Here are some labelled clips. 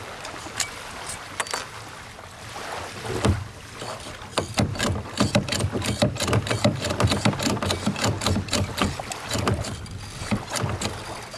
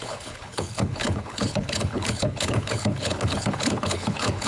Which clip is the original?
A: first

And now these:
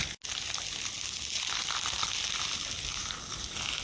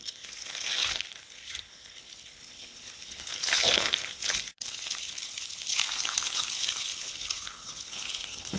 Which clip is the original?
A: first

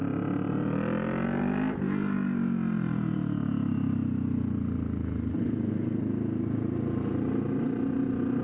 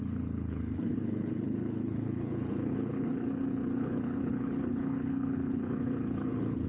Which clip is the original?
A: first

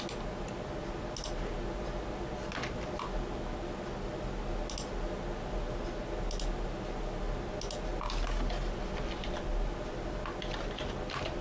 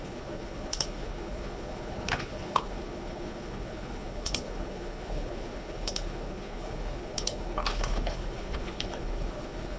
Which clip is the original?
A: first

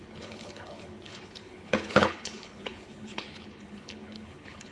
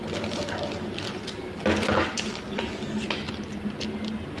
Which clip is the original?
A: second